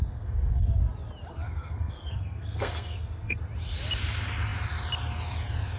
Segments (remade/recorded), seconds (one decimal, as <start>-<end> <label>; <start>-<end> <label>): 0.0-0.7 remade; 0.7-1.3 recorded; 1.3-3.4 remade; 3.4-5.8 recorded